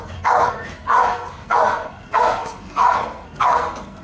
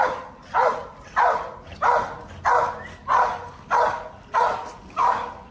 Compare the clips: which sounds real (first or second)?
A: second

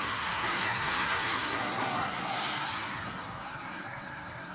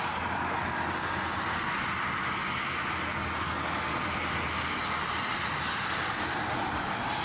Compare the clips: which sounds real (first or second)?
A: second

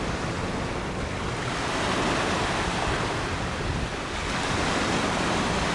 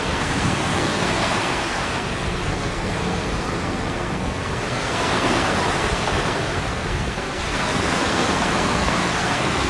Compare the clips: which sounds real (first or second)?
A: first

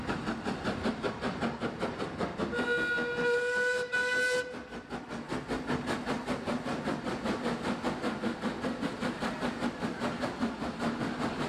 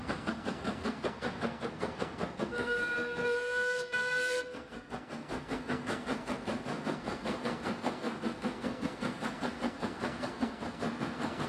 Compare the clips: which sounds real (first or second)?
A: first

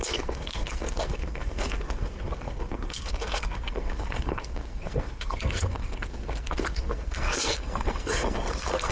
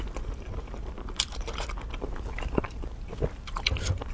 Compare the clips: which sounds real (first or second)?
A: second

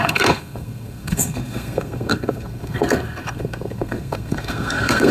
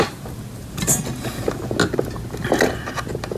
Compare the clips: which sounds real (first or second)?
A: second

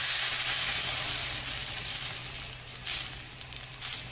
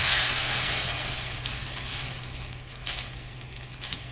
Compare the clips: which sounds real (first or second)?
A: first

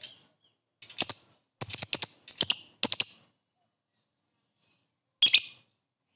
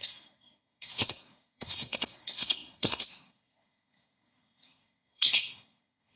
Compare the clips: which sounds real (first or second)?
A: first